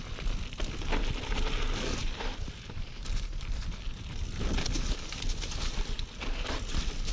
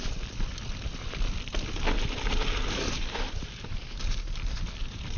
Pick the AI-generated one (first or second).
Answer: second